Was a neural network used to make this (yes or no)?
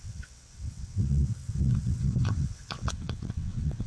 yes